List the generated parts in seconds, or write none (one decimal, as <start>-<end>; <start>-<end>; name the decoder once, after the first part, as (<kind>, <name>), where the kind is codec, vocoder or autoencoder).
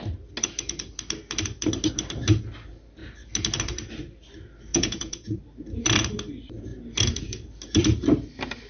4.7-5.4 (vocoder, Vocos)